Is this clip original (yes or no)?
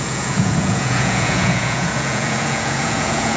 no